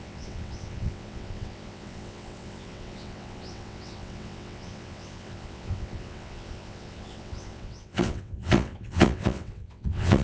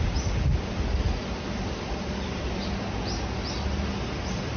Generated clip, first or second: first